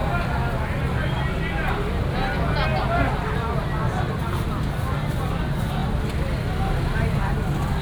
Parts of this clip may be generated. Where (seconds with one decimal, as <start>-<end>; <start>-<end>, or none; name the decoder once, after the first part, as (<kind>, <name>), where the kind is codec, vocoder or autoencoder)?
none